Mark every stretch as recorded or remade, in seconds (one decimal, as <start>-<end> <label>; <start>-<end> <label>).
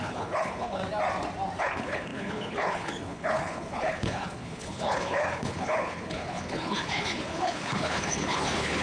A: 0.0-0.8 remade; 0.8-1.6 recorded; 1.6-8.8 remade